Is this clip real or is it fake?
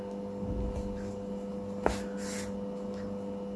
real